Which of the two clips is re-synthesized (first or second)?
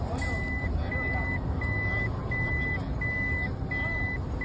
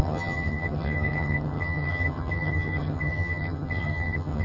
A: second